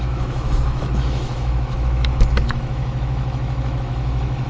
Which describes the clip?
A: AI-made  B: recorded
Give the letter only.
A